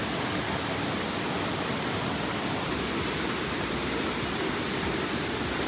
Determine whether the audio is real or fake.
real